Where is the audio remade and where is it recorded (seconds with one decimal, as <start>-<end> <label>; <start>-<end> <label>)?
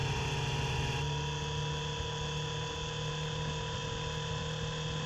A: 0.0-5.1 recorded